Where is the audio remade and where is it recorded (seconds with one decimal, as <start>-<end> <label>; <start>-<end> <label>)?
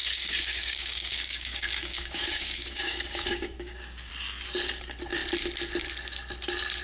0.0-4.1 remade; 4.1-6.8 recorded